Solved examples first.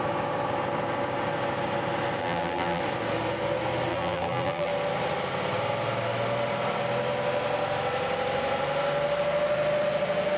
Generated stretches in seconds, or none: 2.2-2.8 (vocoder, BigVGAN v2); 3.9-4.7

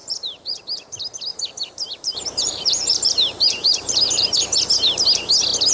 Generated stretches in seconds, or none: 0.0-0.6 (vocoder, BigVGAN v2); 1.3-4.7

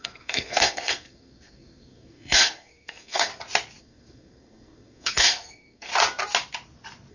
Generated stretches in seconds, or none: 0.0-3.3 (codec, SNAC); 3.8-5.9

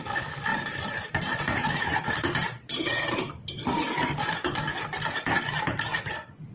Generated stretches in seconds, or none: 0.5-4.3 (vocoder, BigVGAN v2)